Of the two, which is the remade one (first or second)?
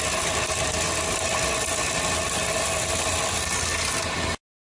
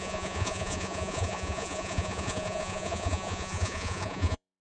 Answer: second